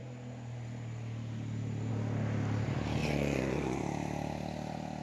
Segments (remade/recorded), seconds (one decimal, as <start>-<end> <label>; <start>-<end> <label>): 0.0-3.0 recorded; 3.0-3.8 remade; 3.8-5.0 recorded